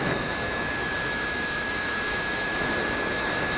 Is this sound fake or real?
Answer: fake